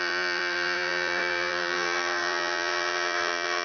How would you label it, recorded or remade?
remade